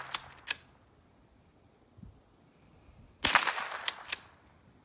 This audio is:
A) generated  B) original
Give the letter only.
B